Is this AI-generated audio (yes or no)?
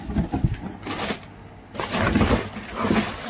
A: no